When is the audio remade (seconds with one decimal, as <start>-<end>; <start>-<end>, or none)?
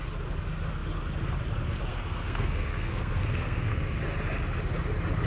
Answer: 1.9-4.0